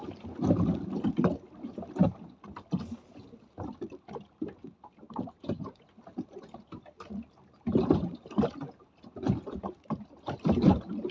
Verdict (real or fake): real